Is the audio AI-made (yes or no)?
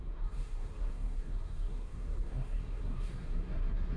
yes